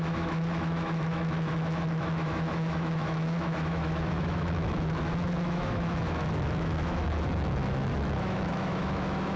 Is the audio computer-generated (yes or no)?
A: yes